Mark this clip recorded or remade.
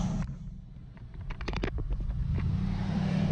remade